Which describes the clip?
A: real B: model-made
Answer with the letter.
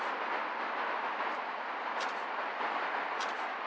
A